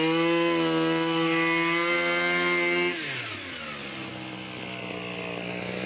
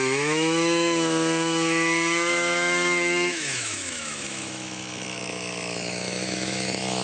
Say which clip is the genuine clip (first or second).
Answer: first